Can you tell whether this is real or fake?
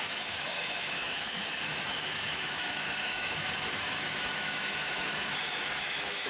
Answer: fake